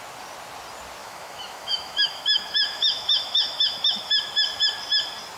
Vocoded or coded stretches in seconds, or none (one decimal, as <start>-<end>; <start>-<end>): 1.0-4.2